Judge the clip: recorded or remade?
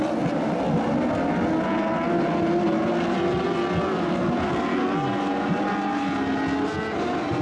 recorded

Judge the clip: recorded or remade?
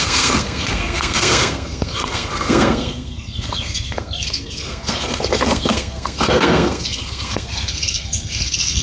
remade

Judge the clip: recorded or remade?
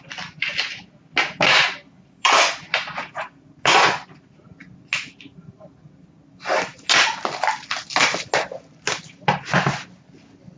recorded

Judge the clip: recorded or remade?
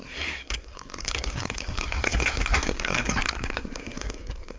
remade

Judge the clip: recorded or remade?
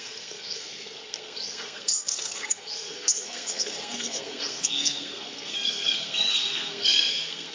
remade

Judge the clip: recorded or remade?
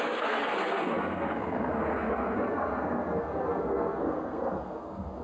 remade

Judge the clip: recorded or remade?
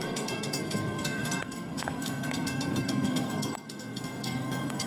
remade